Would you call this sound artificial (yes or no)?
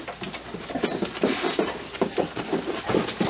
no